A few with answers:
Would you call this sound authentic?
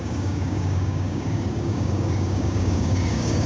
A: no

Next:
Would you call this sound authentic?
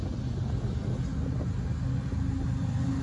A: yes